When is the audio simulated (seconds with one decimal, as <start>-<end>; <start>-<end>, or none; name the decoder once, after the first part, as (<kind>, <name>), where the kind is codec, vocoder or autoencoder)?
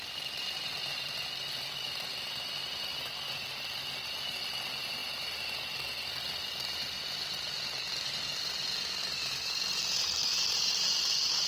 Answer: none